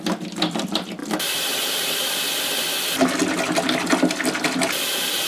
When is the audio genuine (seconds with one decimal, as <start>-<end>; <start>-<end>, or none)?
0.0-1.0; 2.2-5.3